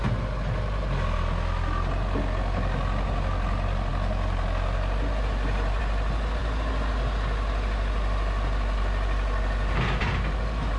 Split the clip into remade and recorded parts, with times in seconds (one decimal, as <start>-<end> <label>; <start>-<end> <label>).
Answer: 0.0-10.8 recorded